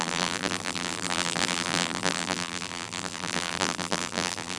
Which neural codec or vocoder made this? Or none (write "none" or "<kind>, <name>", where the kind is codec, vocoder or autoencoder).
vocoder, BigVGAN v2